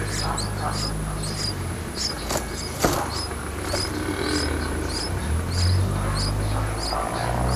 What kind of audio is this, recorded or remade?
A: recorded